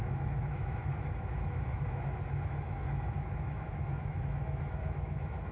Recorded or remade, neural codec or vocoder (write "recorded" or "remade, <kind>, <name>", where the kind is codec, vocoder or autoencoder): remade, autoencoder, DAC-VAE